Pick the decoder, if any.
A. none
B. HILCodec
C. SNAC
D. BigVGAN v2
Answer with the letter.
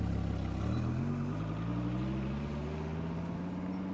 A